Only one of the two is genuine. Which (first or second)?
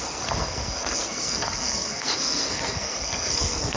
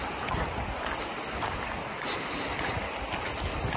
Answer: second